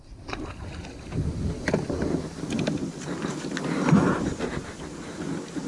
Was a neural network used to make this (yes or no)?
no